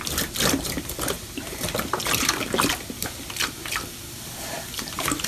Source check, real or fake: fake